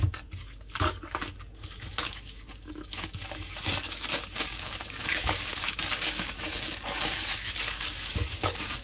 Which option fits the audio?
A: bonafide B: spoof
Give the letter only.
B